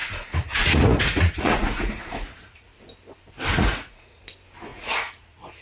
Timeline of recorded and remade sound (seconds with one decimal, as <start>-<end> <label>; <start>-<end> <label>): 0.0-2.8 remade; 2.8-3.5 recorded; 3.5-4.2 remade; 4.2-4.7 recorded; 4.7-5.6 remade